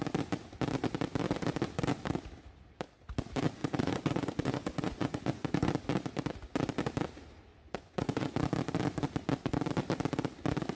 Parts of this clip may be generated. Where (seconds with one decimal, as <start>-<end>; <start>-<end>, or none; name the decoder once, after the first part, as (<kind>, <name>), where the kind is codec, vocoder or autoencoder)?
3.6-5.7 (vocoder, Vocos); 7.5-8.3

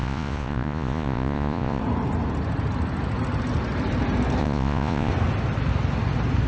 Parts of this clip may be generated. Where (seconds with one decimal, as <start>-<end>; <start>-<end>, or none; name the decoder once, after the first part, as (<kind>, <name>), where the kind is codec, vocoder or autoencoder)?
0.0-1.8 (vocoder, Vocos); 4.4-5.1